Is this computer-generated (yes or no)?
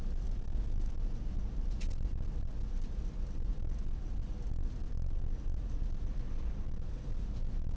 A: no